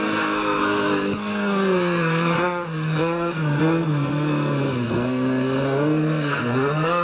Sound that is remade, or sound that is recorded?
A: remade